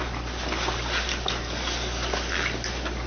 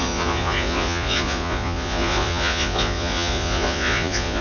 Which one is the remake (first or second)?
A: second